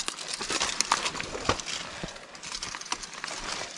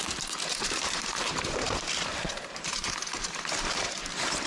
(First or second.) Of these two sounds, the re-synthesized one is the second